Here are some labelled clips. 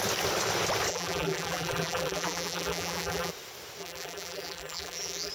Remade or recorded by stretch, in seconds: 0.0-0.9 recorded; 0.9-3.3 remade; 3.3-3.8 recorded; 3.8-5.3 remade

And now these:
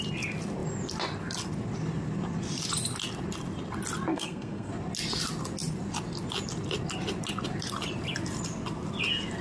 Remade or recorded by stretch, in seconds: 0.0-4.1 recorded; 4.1-4.7 remade; 4.7-9.4 recorded